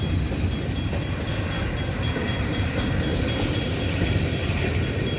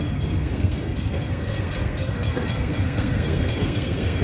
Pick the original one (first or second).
first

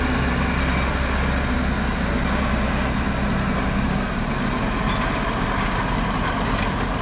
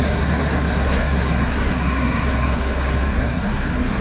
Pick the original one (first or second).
first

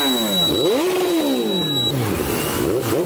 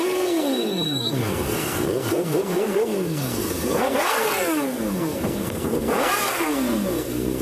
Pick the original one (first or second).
first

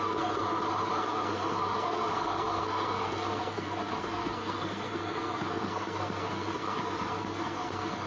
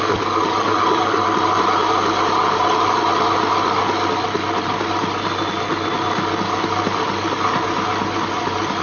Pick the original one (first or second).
second